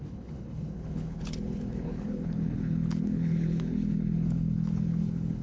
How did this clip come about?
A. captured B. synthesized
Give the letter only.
B